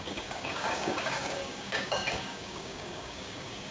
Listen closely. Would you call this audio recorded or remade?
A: remade